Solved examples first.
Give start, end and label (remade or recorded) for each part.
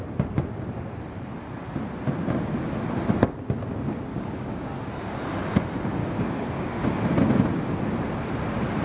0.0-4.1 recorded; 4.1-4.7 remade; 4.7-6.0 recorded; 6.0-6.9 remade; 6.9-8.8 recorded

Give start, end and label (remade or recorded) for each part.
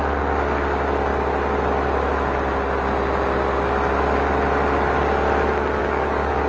0.0-5.8 recorded; 5.8-6.5 remade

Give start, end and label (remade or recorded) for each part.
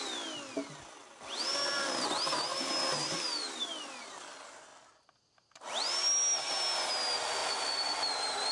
0.0-8.5 recorded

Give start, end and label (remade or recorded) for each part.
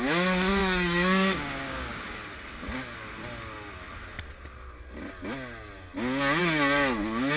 0.0-0.6 recorded; 0.6-2.0 remade; 2.0-7.4 recorded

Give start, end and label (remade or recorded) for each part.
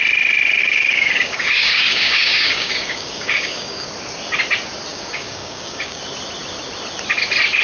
0.0-0.6 recorded; 0.6-3.9 remade; 3.9-4.9 recorded; 4.9-6.0 remade; 6.0-7.6 recorded